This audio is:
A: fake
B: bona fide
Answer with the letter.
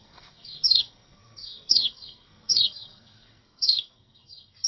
A